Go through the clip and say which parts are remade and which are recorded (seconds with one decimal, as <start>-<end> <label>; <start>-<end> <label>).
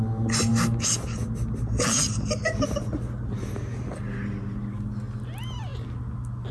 0.0-6.5 recorded